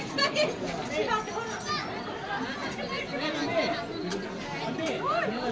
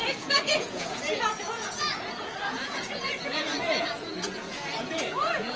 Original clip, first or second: first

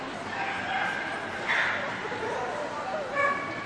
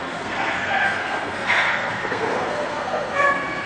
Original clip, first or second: first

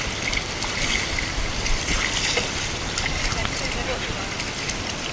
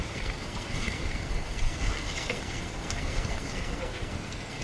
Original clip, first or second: first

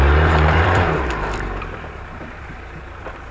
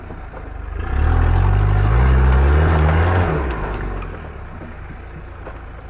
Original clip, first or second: second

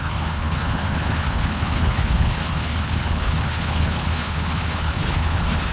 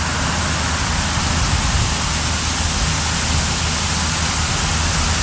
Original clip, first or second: second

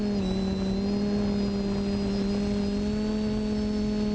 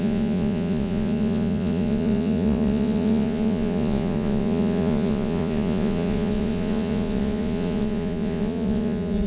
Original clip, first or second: first